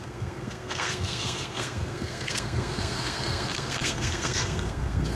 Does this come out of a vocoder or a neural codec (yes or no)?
yes